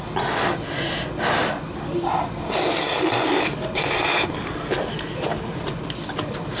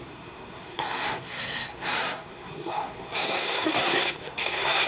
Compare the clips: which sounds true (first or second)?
first